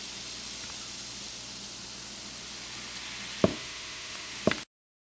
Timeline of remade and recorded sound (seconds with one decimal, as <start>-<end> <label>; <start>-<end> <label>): 0.0-3.5 recorded; 3.5-4.3 remade; 4.3-5.0 recorded